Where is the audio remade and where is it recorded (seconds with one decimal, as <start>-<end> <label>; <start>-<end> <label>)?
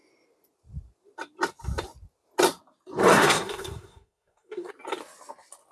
0.0-3.1 recorded; 3.1-4.7 remade; 4.7-5.7 recorded